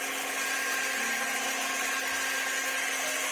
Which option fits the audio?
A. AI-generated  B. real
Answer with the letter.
B